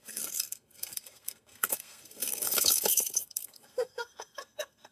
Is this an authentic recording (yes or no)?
no